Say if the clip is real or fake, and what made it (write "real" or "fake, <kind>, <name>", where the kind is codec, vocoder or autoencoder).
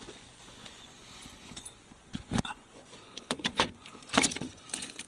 fake, vocoder, Vocos